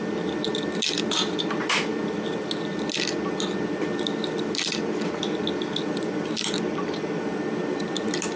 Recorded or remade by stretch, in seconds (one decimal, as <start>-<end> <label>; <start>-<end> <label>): 0.0-8.4 recorded